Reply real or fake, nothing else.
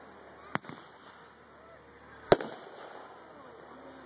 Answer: real